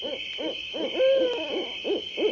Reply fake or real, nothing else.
real